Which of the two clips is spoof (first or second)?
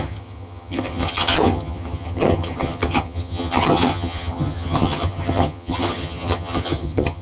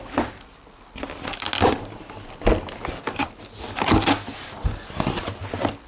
first